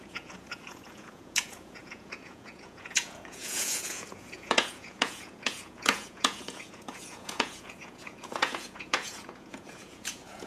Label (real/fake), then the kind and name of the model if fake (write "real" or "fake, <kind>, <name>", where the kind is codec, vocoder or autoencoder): fake, vocoder, Vocos